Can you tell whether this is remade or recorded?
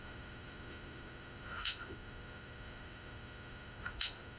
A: remade